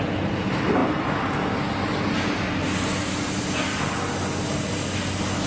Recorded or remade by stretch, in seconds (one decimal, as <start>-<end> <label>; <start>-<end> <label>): 0.0-5.5 recorded

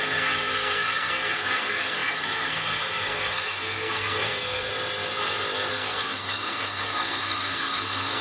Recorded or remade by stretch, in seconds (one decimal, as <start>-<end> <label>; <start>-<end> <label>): 0.0-4.7 remade; 4.7-5.7 recorded; 5.7-8.2 remade